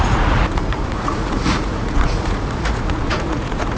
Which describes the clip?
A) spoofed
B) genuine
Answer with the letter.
A